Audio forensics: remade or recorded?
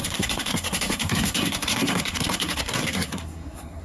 remade